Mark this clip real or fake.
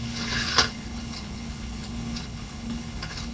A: fake